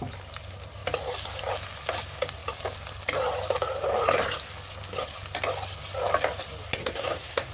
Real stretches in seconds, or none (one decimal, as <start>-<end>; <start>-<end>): 0.0-6.8